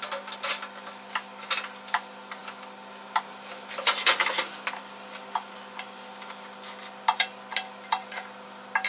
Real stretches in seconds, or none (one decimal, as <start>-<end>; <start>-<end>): 0.0-8.9